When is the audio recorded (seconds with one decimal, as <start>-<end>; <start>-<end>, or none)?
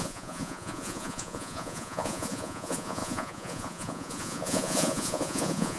none